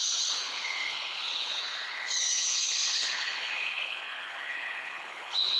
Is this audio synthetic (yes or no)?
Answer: yes